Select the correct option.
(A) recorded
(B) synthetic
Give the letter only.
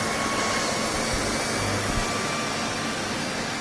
A